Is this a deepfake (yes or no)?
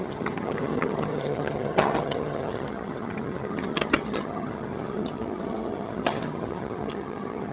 yes